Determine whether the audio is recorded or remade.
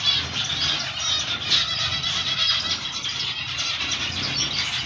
recorded